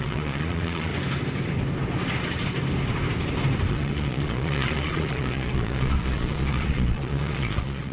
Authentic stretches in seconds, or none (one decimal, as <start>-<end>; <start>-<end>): 0.9-3.7